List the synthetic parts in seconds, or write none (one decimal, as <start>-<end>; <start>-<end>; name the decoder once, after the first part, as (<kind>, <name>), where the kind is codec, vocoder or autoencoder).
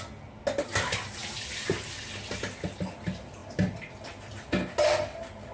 none